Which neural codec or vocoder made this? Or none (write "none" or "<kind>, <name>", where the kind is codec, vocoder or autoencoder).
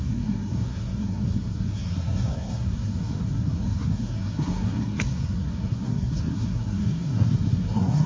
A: codec, SNAC